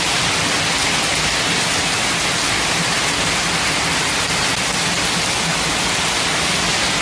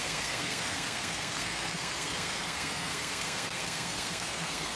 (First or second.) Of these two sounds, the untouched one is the first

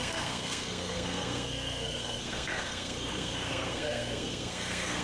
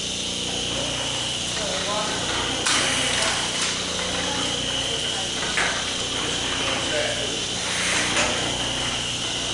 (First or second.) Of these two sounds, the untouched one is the second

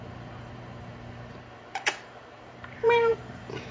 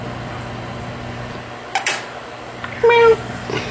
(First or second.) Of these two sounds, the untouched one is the second